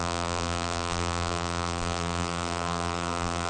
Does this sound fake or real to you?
fake